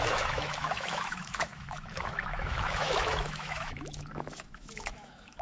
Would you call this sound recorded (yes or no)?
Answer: no